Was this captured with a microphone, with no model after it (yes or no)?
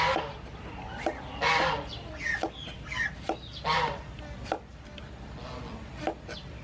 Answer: yes